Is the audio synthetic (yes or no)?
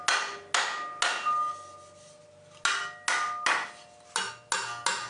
no